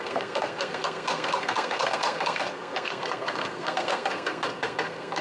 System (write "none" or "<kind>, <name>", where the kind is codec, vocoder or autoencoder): codec, SNAC